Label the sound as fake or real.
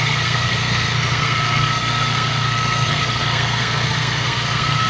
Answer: fake